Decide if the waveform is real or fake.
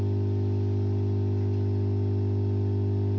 real